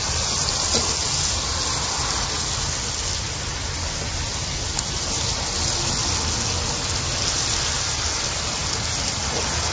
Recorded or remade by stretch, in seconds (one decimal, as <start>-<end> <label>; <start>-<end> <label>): 0.0-9.7 recorded